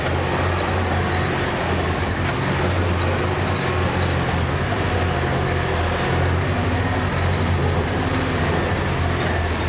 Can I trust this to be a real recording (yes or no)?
yes